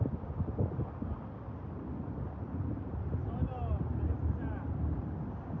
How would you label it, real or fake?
real